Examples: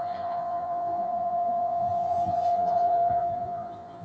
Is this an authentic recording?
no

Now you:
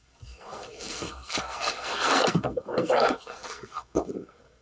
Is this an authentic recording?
no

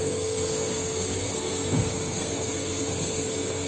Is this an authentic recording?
no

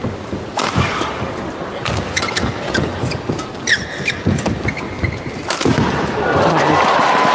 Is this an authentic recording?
yes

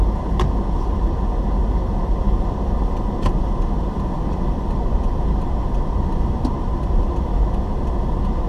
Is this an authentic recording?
yes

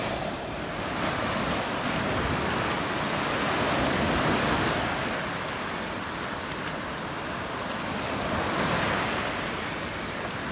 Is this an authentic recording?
yes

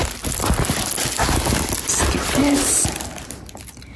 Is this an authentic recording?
yes